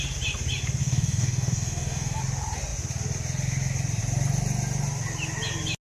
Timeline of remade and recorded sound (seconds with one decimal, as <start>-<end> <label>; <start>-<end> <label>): 0.0-0.8 recorded; 0.8-2.2 remade; 2.2-5.9 recorded